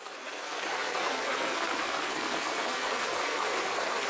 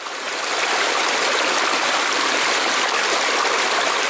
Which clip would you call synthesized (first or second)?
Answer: first